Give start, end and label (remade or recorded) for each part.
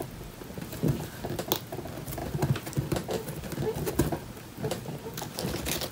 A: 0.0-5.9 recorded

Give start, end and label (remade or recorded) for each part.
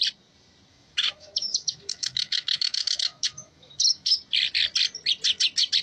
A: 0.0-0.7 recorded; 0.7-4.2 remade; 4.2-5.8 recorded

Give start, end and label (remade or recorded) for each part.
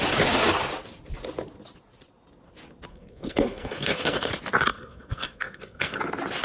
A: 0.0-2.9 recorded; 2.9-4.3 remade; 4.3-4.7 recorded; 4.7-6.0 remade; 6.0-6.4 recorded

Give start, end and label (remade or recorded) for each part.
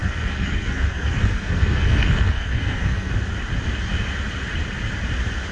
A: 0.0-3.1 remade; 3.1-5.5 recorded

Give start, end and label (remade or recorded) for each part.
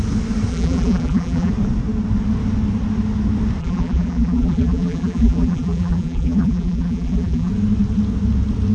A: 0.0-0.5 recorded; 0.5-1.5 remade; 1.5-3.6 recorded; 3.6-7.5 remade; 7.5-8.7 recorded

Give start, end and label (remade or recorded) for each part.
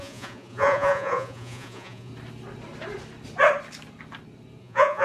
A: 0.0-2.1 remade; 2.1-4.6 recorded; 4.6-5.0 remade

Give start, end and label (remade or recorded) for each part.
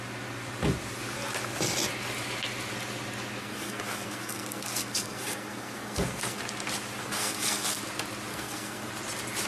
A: 0.0-3.4 recorded; 3.4-6.4 remade; 6.4-7.0 recorded; 7.0-7.8 remade; 7.8-8.3 recorded; 8.3-8.9 remade; 8.9-9.5 recorded